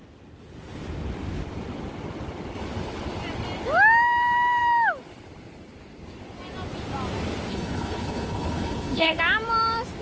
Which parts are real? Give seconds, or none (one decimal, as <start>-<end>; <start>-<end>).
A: 0.0-7.5; 9.2-10.0